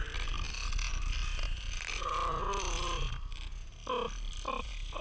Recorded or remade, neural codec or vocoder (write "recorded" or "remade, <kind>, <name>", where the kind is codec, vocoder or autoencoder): recorded